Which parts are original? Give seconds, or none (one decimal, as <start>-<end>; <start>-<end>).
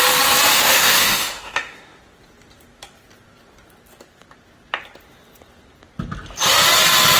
0.0-0.5; 2.0-7.2